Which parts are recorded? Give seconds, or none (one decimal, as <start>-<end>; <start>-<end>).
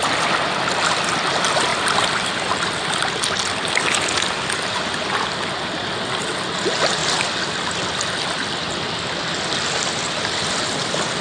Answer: 0.0-11.2